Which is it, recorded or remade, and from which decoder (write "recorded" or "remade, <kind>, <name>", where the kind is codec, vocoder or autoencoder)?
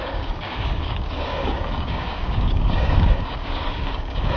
remade, codec, DAC